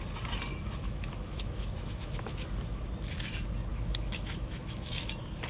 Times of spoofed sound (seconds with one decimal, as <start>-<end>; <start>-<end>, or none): 0.5-2.8; 3.7-5.1